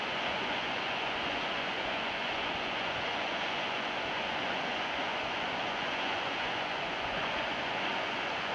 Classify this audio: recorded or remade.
remade